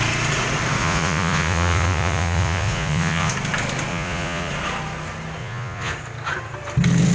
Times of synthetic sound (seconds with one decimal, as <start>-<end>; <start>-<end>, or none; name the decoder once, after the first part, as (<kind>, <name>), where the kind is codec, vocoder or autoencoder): 0.8-3.3 (vocoder, Vocos); 3.9-4.5; 5.4-5.9